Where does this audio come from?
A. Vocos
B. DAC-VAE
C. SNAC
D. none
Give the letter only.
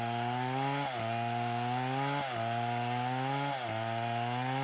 D